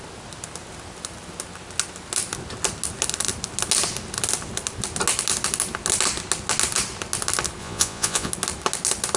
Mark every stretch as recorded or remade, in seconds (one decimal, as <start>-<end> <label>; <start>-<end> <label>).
0.0-7.6 recorded; 7.6-8.3 remade; 8.3-9.2 recorded

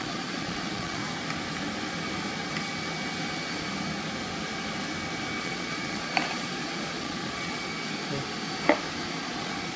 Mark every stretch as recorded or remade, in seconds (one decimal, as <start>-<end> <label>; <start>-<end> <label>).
0.0-1.0 remade; 1.0-5.4 recorded; 5.4-7.7 remade; 7.7-9.2 recorded; 9.2-9.8 remade

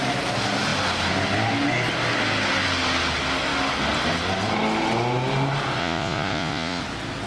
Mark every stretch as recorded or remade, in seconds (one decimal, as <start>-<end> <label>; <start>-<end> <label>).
0.0-5.8 recorded; 5.8-6.8 remade; 6.8-7.3 recorded

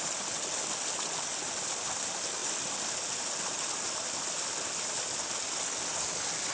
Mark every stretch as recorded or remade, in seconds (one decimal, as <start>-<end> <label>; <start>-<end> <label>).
0.0-6.5 recorded

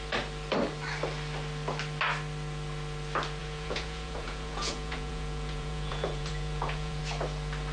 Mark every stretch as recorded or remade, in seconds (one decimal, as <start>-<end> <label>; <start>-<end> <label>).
0.0-3.4 recorded; 3.4-7.0 remade; 7.0-7.7 recorded

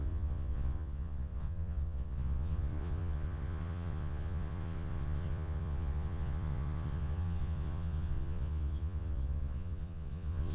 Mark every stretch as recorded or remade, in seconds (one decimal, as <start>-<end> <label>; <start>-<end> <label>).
0.0-10.5 remade

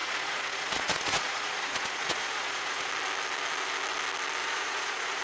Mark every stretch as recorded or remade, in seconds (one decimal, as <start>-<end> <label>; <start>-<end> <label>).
0.0-2.9 remade; 2.9-4.4 recorded; 4.4-5.2 remade

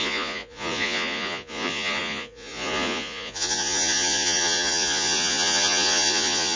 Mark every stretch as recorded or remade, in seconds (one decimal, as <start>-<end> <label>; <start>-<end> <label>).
0.0-6.6 remade